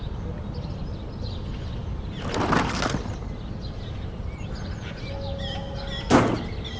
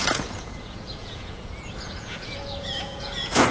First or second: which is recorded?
first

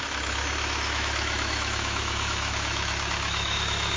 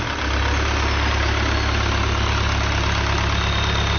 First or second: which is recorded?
second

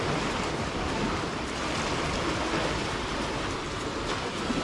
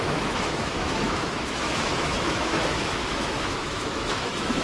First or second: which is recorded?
first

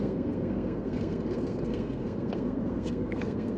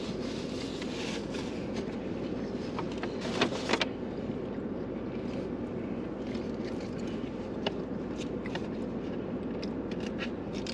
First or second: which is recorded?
second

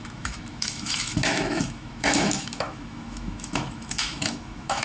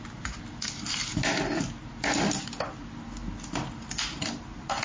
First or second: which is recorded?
second